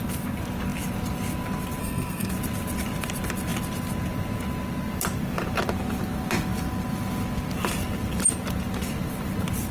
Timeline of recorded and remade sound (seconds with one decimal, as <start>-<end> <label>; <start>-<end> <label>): 0.0-1.8 recorded; 1.8-2.3 remade; 2.3-9.7 recorded